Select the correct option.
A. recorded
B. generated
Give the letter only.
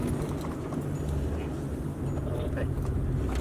A